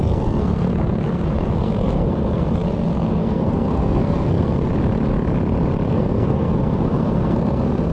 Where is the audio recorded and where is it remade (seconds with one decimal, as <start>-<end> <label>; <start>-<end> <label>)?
0.0-4.7 remade; 4.7-5.9 recorded; 5.9-7.9 remade